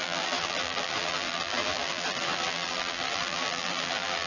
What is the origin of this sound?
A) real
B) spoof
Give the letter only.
B